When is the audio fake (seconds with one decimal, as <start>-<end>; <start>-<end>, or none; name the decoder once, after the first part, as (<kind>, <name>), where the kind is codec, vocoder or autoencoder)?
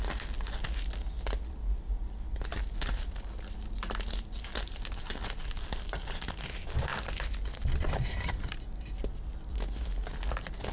none